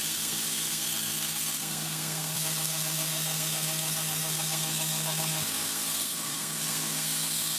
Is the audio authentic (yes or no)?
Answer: no